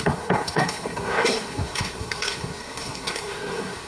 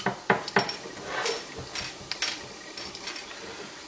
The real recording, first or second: second